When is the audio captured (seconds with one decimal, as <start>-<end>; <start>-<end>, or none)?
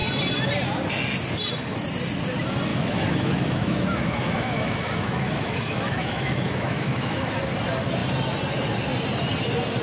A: 0.0-2.7; 7.3-9.8